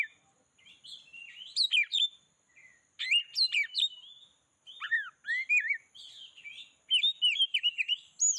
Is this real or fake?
real